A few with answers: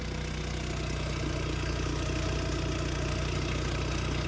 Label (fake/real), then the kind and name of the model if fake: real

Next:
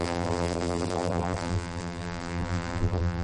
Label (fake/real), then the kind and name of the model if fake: fake, vocoder, BigVGAN v2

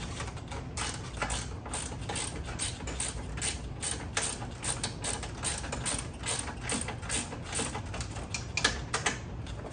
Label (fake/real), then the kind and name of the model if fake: real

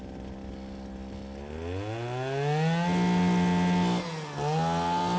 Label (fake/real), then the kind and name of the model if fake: real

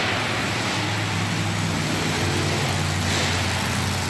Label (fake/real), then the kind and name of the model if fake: real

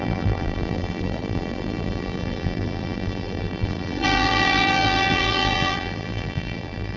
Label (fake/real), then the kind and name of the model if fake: fake, vocoder, BigVGAN v2